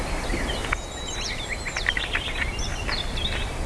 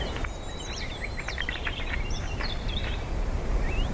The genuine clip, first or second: first